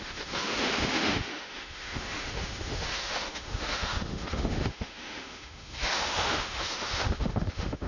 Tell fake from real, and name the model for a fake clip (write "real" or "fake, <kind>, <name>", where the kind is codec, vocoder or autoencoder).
fake, autoencoder, DAC-VAE